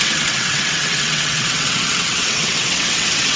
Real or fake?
fake